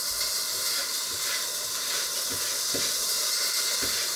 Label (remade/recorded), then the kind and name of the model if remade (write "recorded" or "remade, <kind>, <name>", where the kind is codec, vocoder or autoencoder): recorded